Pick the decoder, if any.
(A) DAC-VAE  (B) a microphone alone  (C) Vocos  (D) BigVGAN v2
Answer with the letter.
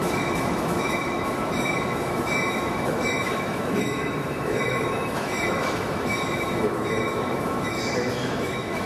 A